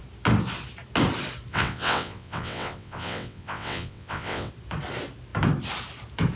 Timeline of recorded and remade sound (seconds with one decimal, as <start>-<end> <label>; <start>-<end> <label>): 0.0-1.5 recorded; 1.5-4.5 remade; 4.5-6.4 recorded